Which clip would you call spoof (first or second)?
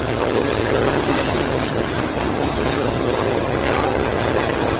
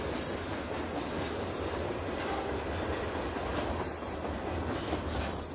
first